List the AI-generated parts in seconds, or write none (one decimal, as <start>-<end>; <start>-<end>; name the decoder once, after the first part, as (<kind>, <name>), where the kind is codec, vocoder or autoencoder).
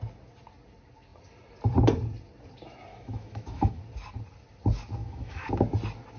2.9-3.8 (autoencoder, DAC-VAE); 5.0-5.5